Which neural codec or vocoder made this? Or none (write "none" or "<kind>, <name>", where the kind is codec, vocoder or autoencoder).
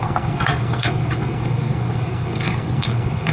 codec, SNAC